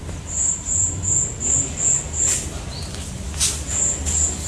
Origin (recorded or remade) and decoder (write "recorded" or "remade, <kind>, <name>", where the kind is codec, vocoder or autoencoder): recorded